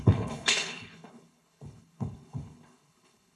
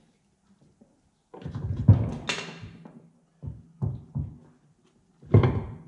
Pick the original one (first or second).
second